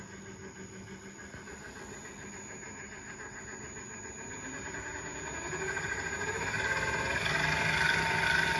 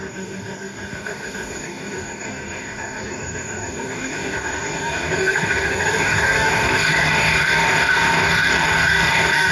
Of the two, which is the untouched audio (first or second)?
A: first